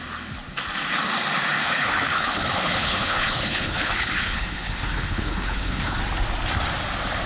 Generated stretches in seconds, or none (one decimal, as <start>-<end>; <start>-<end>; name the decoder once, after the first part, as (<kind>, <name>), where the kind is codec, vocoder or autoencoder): 1.6-6.0 (codec, HILCodec)